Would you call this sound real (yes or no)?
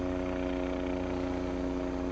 yes